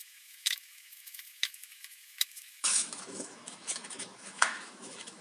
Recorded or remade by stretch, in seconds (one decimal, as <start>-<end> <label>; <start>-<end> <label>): 0.0-5.2 remade